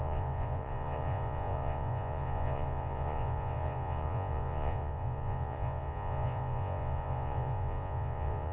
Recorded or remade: remade